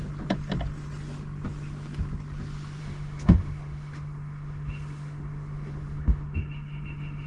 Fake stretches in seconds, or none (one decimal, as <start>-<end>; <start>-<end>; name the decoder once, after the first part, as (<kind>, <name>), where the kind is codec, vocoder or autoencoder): 2.8-7.3 (autoencoder, DAC-VAE)